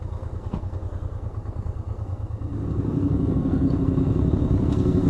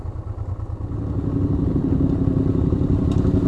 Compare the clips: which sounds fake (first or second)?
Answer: first